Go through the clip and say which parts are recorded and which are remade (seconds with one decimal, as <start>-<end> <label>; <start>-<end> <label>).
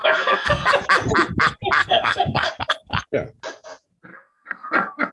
0.0-0.7 remade; 0.7-1.8 recorded; 1.8-2.5 remade; 2.5-4.1 recorded; 4.1-5.1 remade